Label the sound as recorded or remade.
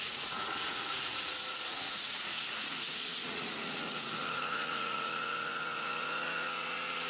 remade